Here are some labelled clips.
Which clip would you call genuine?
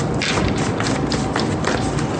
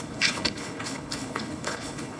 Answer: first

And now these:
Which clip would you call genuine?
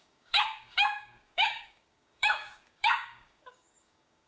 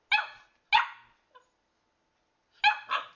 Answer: second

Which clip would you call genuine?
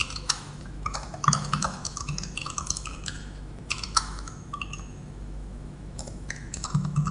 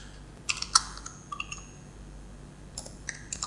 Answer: second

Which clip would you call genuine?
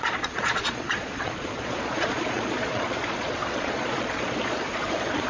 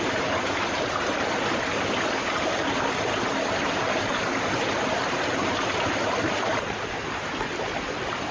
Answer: second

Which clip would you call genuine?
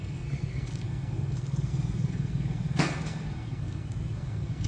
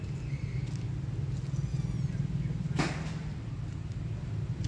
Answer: second